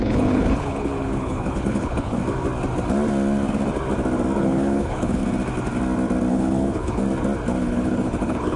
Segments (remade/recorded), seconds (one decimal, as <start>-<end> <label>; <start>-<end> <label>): 0.0-2.2 remade; 2.2-4.4 recorded; 4.4-5.2 remade; 5.2-6.3 recorded; 6.3-7.0 remade; 7.0-7.6 recorded; 7.6-8.6 remade